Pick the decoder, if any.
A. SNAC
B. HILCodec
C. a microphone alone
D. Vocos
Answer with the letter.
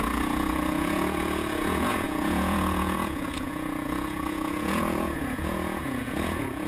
D